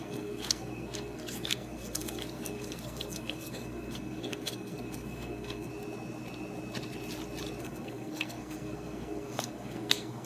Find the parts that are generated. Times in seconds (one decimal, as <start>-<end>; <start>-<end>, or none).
0.0-5.7; 7.6-10.3

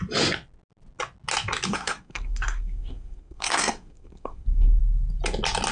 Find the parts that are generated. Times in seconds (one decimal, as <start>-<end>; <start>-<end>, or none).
1.7-4.8

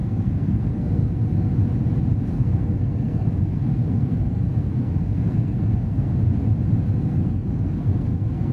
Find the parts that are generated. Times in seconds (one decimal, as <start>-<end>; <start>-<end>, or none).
0.0-1.5; 2.3-6.1; 7.0-8.5

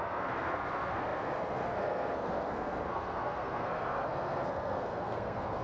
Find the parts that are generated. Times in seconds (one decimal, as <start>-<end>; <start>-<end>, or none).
0.0-5.6